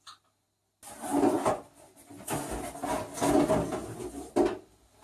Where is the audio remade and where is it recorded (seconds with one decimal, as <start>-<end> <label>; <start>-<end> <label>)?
0.0-3.8 recorded; 3.8-4.3 remade; 4.3-5.0 recorded